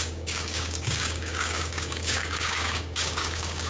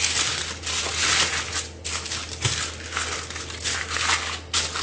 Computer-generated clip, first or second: first